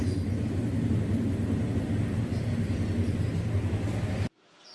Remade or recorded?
recorded